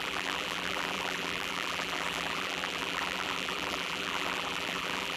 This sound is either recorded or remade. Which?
remade